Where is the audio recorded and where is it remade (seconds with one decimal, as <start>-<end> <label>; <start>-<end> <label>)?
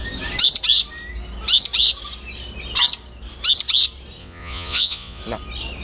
0.0-4.2 recorded; 4.2-5.2 remade; 5.2-5.8 recorded